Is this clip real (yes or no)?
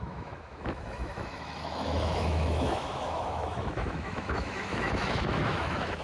no